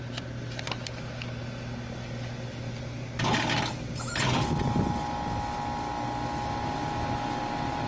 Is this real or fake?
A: real